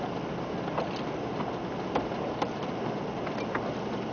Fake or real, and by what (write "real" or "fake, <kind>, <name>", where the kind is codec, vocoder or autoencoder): real